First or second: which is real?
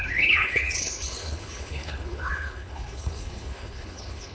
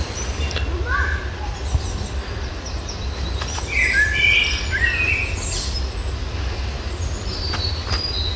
second